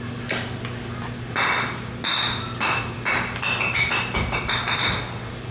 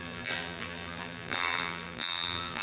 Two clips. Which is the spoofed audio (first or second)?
second